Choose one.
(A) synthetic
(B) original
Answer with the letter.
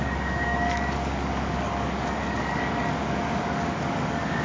A